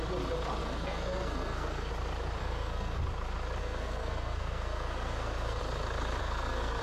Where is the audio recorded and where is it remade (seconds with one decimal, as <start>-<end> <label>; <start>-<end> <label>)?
0.0-0.6 recorded; 0.6-1.9 remade; 1.9-2.4 recorded; 2.4-3.0 remade; 3.0-3.6 recorded; 3.6-5.6 remade; 5.6-6.2 recorded; 6.2-6.8 remade